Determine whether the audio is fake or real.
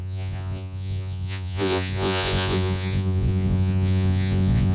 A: fake